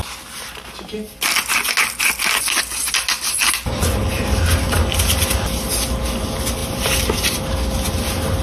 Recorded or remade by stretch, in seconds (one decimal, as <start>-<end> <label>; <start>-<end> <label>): 0.0-6.6 recorded; 6.6-7.4 remade; 7.4-8.4 recorded